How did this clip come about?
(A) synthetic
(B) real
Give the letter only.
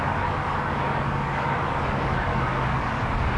A